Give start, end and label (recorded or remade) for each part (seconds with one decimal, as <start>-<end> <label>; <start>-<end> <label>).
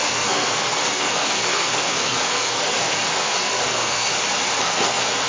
0.0-4.1 remade; 4.1-4.6 recorded; 4.6-5.3 remade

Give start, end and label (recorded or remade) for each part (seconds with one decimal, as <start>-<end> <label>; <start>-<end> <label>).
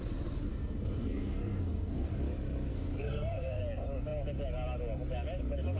0.0-0.5 recorded; 0.5-2.1 remade; 2.1-2.7 recorded; 2.7-3.6 remade; 3.6-5.8 recorded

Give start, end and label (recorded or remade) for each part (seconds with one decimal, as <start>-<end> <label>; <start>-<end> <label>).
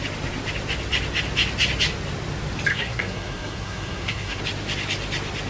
0.0-2.7 recorded; 2.7-4.4 remade; 4.4-5.5 recorded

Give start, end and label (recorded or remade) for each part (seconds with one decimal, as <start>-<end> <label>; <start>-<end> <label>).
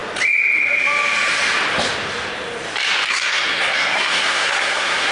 0.0-3.1 recorded; 3.1-5.1 remade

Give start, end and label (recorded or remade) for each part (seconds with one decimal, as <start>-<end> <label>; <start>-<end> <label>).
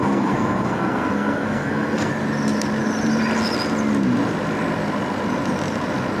0.0-2.1 remade; 2.1-6.2 recorded